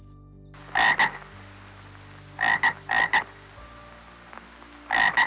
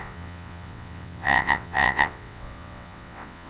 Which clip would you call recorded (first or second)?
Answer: first